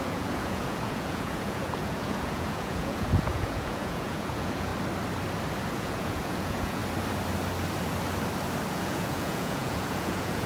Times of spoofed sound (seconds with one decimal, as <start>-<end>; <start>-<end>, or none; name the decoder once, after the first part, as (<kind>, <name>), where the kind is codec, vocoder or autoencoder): 0.0-4.7 (vocoder, Vocos); 5.7-6.8; 8.7-10.5